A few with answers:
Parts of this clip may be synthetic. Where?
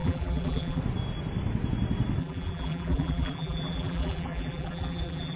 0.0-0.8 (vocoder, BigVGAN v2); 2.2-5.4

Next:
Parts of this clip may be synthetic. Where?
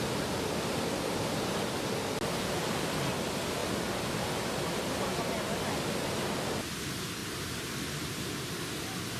7.2-8.2 (vocoder, BigVGAN v2)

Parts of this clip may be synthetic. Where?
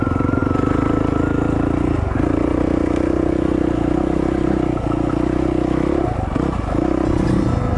none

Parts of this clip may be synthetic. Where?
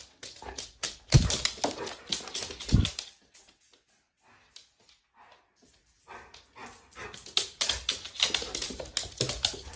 none